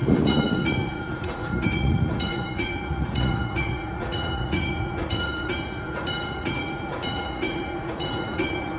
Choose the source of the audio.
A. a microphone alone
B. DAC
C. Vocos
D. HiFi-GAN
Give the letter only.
C